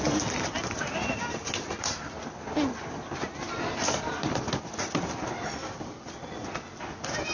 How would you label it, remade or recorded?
remade